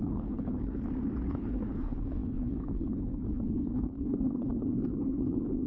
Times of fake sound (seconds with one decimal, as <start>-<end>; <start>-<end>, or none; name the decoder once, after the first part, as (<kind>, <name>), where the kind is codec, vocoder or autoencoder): 0.0-0.8 (codec, HILCodec); 1.3-5.7